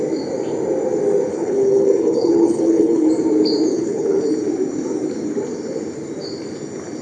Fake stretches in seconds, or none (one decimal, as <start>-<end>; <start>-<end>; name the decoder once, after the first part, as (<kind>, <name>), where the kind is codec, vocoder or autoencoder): 1.3-3.1 (codec, HILCodec); 3.7-4.3